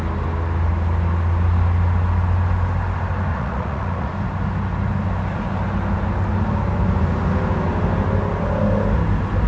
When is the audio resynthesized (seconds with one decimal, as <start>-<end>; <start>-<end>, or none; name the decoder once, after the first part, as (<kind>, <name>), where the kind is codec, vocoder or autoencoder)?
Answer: 3.3-4.1 (vocoder, Vocos)